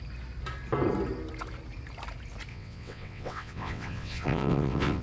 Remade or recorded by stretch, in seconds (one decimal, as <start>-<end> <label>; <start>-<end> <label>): 0.0-2.5 recorded; 2.5-5.0 remade